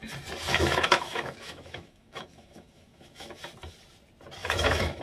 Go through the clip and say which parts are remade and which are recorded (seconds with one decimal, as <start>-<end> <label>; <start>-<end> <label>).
0.0-0.5 recorded; 0.5-3.4 remade; 3.4-4.4 recorded; 4.4-5.0 remade